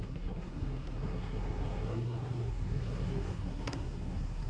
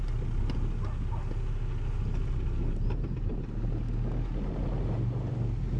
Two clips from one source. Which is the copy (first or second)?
first